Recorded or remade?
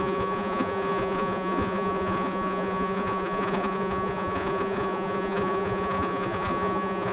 remade